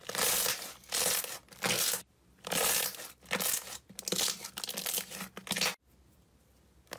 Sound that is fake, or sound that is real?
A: real